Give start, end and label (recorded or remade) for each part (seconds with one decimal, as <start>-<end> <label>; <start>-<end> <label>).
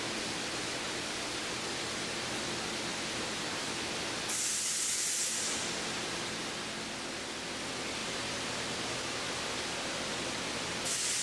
0.0-2.9 recorded; 2.9-3.8 remade; 3.8-11.2 recorded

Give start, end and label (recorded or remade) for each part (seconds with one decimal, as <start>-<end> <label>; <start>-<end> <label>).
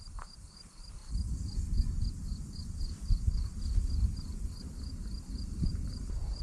0.0-1.0 remade; 1.0-4.8 recorded; 4.8-6.4 remade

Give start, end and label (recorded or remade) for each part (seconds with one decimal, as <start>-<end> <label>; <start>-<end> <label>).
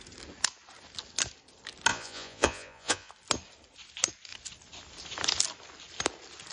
0.0-1.9 recorded; 1.9-3.1 remade; 3.1-6.5 recorded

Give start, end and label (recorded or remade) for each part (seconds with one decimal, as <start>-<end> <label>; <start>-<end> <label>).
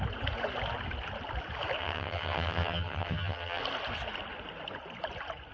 0.0-1.8 recorded; 1.8-3.6 remade; 3.6-5.5 recorded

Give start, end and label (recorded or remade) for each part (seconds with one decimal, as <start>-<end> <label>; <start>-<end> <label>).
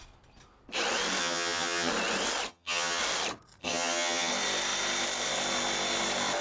0.0-1.2 recorded; 1.2-1.9 remade; 1.9-2.5 recorded; 2.5-3.0 remade; 3.0-3.6 recorded; 3.6-4.3 remade; 4.3-6.4 recorded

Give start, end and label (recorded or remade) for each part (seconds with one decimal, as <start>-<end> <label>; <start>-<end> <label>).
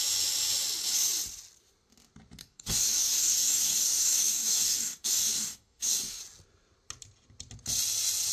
0.0-2.4 recorded; 2.4-6.2 remade; 6.2-8.3 recorded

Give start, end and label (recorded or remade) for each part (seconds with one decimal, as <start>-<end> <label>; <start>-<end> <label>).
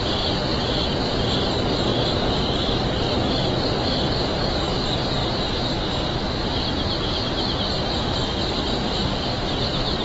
0.0-1.9 recorded; 1.9-2.8 remade; 2.8-5.2 recorded; 5.2-8.0 remade; 8.0-10.0 recorded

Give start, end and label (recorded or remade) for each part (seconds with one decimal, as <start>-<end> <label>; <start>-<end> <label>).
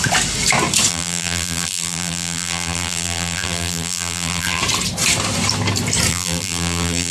0.0-0.9 recorded; 0.9-4.6 remade; 4.6-6.1 recorded; 6.1-7.1 remade